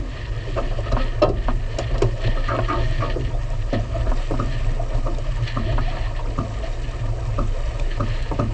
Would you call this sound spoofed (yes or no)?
no